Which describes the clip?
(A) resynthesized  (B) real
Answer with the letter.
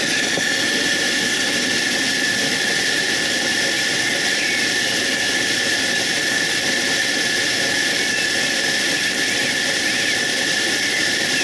A